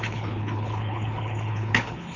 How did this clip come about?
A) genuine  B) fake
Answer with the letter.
B